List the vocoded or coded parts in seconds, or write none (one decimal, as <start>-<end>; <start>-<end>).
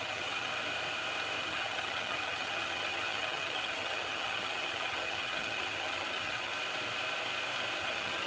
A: 0.0-0.5; 1.4-6.5; 7.8-8.3